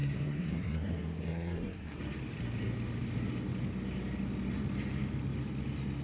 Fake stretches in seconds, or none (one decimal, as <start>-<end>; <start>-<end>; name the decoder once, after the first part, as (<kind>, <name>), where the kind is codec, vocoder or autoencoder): 0.0-2.0 (codec, SNAC)